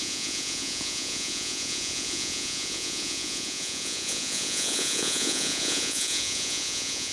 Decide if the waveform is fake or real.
fake